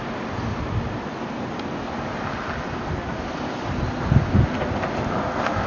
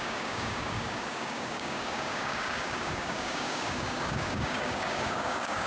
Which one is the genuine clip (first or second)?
first